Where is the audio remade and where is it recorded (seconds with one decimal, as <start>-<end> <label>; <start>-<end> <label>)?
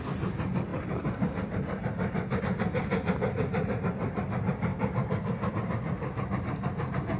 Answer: 0.0-7.2 recorded